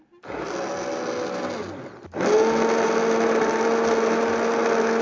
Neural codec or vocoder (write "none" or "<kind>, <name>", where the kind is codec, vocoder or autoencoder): none